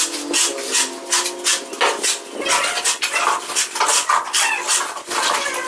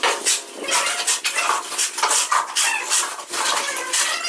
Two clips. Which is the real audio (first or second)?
first